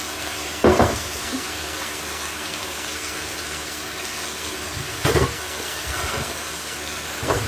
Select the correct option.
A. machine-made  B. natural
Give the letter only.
A